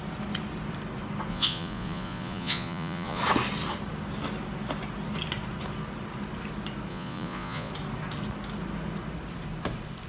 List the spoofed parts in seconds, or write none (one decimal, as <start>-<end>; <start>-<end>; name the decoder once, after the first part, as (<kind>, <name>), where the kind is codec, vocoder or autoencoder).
1.3-3.2 (vocoder, Vocos); 6.9-7.7

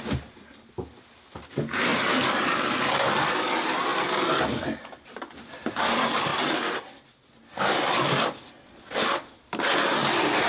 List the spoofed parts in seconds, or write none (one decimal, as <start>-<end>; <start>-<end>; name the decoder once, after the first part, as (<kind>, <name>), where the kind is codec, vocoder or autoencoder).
none

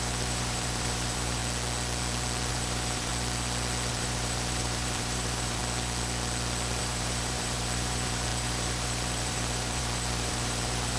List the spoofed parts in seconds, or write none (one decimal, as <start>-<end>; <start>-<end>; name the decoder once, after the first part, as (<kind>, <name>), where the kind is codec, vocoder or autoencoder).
0.0-1.4 (vocoder, BigVGAN v2); 2.5-3.1; 3.9-5.6; 6.8-11.0

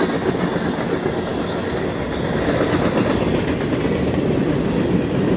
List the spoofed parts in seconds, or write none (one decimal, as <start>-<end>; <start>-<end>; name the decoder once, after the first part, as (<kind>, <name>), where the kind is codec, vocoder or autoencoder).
none

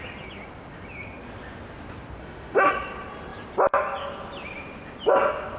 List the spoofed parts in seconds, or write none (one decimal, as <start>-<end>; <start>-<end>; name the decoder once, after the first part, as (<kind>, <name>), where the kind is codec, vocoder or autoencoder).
2.2-2.7 (autoencoder, DAC-VAE)

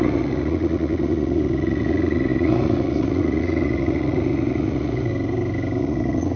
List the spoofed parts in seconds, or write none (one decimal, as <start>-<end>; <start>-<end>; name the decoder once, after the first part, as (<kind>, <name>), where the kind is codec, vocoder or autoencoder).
0.0-5.1 (vocoder, Vocos); 5.8-6.4

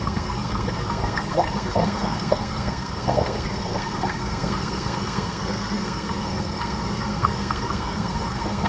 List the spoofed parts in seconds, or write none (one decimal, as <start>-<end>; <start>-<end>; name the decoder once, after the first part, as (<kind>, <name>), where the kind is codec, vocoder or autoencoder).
0.0-8.7 (codec, SNAC)

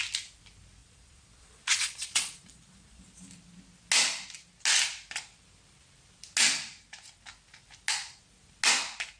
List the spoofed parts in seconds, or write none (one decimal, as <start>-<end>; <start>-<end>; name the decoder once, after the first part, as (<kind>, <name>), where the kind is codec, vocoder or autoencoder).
0.8-3.0 (vocoder, Vocos)